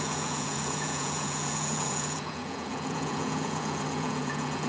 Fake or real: fake